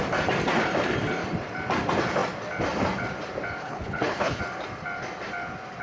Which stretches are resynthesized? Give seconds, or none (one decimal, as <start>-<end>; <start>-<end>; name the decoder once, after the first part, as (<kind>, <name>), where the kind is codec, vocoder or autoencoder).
3.6-4.4 (codec, HILCodec)